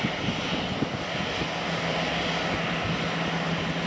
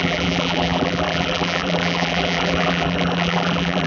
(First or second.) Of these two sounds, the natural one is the first